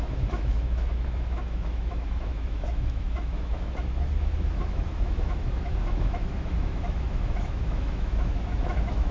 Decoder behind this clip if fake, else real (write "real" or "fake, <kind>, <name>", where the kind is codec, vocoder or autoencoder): fake, autoencoder, DAC-VAE